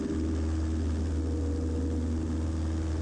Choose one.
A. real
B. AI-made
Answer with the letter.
A